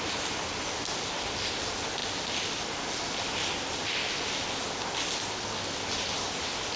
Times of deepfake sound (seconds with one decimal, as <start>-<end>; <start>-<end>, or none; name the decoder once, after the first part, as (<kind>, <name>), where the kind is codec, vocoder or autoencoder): none